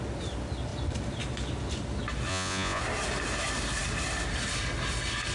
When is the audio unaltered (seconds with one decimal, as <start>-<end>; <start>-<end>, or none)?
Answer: 0.0-2.3; 2.8-5.3